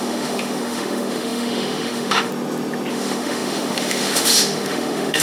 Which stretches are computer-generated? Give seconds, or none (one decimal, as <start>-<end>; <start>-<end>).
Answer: 0.0-2.3; 2.9-5.2